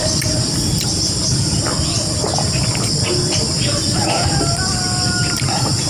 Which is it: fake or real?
real